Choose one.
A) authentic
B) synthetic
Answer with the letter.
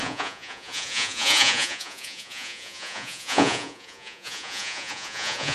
B